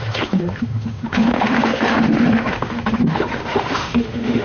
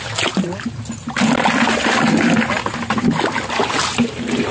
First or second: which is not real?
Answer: first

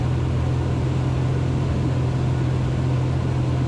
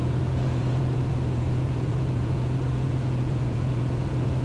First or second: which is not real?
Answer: second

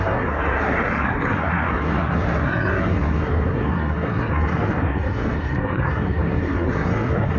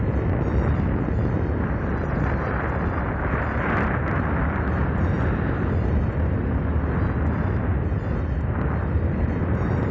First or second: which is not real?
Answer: first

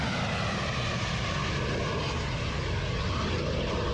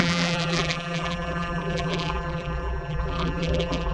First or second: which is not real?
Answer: second